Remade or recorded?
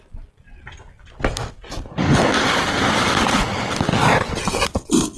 recorded